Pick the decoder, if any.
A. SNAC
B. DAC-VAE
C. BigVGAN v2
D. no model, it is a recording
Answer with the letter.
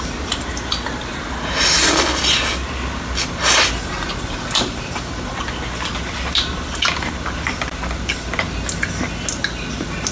D